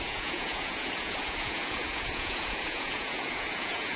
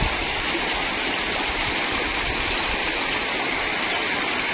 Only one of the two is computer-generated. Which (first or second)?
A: first